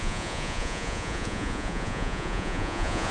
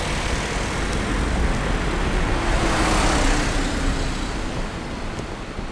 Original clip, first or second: second